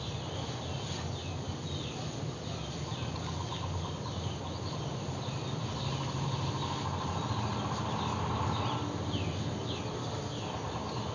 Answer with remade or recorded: recorded